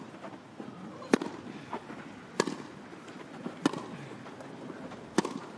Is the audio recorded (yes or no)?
yes